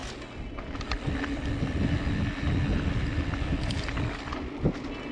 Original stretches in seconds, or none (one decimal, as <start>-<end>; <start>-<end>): 0.0-5.1